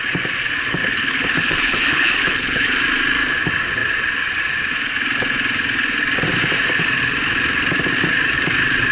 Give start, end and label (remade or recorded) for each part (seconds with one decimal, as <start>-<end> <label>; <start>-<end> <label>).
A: 0.0-0.8 recorded; 0.8-2.7 remade; 2.7-8.9 recorded